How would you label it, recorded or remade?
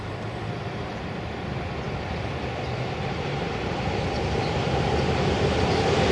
remade